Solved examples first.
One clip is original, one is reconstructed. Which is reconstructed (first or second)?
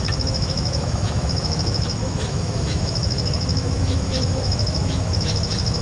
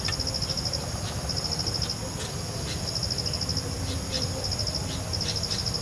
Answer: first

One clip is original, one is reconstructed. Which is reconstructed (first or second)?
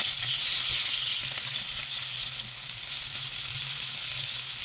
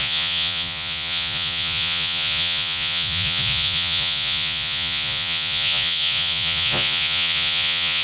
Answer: second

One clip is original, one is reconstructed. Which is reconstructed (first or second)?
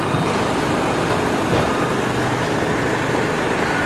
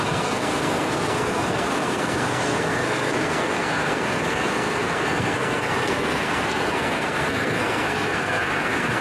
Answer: second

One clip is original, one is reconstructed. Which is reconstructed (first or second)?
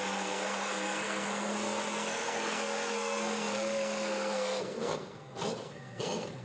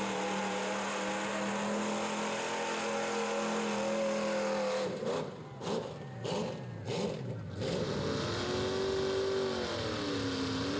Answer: first